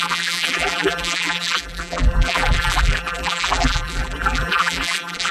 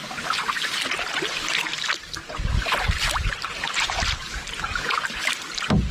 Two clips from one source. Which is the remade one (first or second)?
first